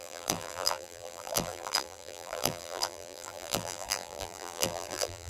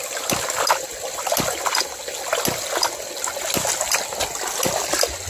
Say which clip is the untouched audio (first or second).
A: second